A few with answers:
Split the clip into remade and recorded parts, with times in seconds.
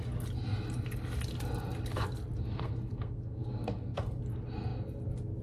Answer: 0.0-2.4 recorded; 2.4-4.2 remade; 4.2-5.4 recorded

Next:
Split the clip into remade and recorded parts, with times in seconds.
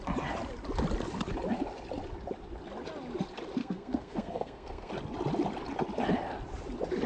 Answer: 0.0-3.6 recorded; 3.6-4.9 remade; 4.9-7.1 recorded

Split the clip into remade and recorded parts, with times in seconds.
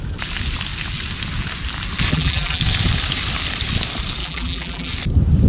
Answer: 0.0-2.1 recorded; 2.1-2.6 remade; 2.6-4.2 recorded; 4.2-4.9 remade; 4.9-5.5 recorded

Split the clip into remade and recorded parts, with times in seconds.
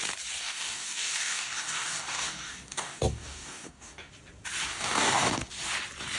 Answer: 0.0-0.4 recorded; 0.4-4.1 remade; 4.1-4.7 recorded; 4.7-5.5 remade; 5.5-6.2 recorded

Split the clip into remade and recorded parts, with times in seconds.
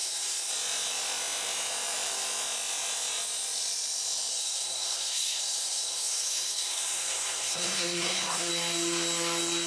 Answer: 0.0-0.5 remade; 0.5-4.3 recorded; 4.3-8.5 remade; 8.5-9.7 recorded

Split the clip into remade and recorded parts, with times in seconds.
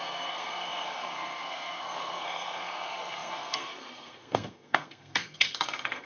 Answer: 0.0-6.1 remade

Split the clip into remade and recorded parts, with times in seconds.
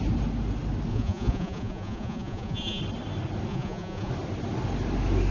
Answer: 0.0-0.9 recorded; 0.9-2.8 remade; 2.8-3.5 recorded; 3.5-4.1 remade; 4.1-5.3 recorded